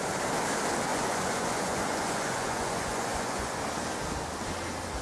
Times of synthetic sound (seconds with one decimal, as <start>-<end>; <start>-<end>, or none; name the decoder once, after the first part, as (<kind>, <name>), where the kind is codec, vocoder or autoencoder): 0.9-3.6 (vocoder, Vocos)